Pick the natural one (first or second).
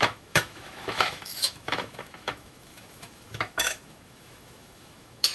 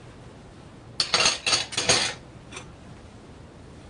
second